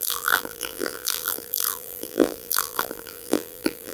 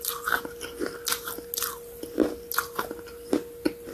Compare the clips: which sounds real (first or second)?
second